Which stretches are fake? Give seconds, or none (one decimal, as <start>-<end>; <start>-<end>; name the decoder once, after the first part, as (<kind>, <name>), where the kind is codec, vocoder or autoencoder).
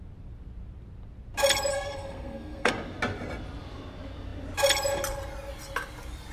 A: 1.7-2.7 (codec, SNAC)